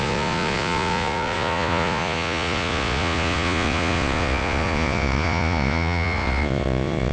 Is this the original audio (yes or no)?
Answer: no